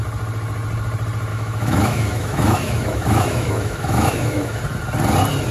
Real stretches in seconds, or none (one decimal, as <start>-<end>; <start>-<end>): 0.0-1.3; 4.6-5.5